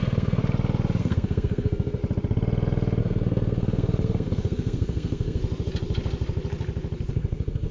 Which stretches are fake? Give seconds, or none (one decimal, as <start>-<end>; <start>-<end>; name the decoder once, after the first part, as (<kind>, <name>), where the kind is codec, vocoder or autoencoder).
0.0-0.4 (codec, SNAC); 1.0-2.0; 3.0-5.4; 7.1-7.7